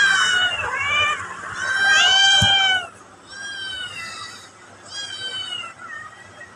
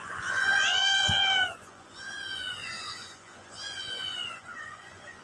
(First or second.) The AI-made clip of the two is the second